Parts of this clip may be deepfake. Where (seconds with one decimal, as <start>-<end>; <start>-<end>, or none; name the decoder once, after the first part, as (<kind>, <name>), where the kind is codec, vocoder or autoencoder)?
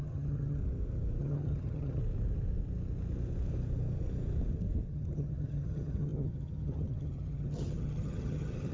0.0-0.6 (vocoder, HiFi-GAN); 1.2-2.0; 4.9-8.7